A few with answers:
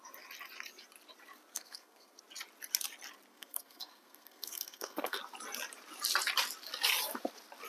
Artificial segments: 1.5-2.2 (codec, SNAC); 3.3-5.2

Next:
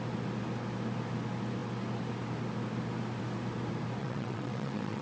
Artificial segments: 4.0-5.0 (vocoder, WaveNeXt)